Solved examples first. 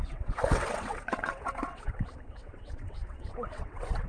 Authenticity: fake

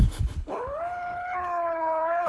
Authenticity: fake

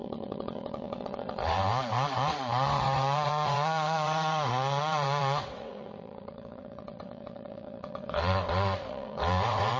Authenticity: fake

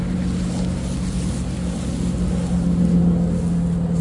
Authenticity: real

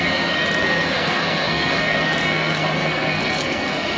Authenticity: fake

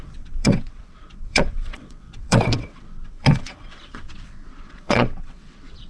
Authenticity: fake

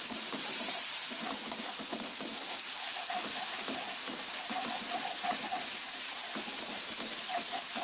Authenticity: fake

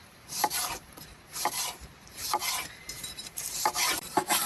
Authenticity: fake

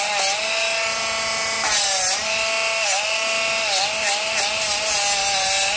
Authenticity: real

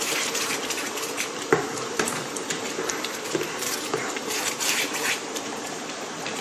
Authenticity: fake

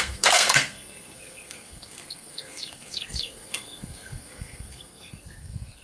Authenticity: fake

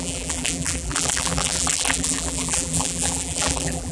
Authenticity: fake